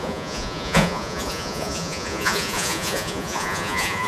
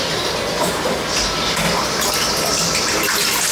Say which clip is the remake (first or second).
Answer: first